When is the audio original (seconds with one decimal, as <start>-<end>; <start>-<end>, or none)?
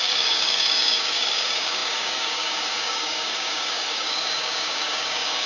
none